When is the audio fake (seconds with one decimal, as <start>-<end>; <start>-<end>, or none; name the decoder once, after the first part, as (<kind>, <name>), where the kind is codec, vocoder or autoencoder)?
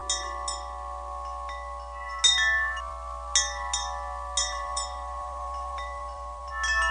4.4-6.5 (vocoder, BigVGAN v2)